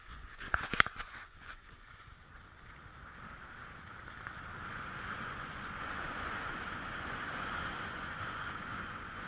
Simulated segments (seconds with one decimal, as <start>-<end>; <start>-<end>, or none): 0.0-2.1; 4.7-9.3